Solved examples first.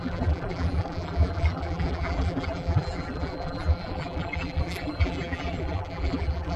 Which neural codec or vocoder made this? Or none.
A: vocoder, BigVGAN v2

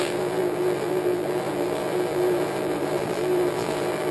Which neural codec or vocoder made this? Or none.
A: vocoder, BigVGAN v2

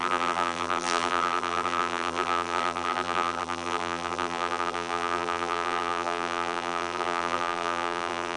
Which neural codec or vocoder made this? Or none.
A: vocoder, BigVGAN v2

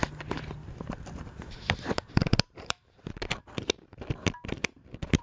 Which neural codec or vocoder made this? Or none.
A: vocoder, BigVGAN v2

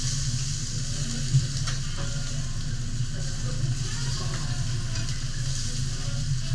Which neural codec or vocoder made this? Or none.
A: none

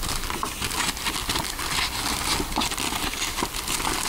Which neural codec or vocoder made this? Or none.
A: none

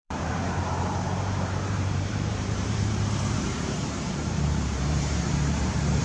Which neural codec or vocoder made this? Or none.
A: vocoder, BigVGAN v2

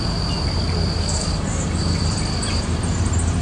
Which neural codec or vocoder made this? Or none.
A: vocoder, BigVGAN v2